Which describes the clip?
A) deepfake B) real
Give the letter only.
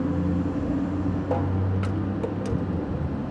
B